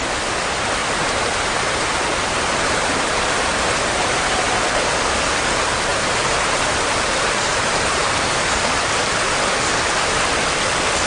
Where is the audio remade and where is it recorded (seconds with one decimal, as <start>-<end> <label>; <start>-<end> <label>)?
0.0-0.8 recorded; 0.8-4.5 remade; 4.5-5.9 recorded; 5.9-6.8 remade; 6.8-7.5 recorded; 7.5-8.5 remade; 8.5-11.1 recorded